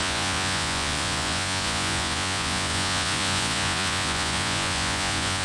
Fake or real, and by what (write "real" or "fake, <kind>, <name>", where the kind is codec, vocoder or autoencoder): fake, vocoder, Vocos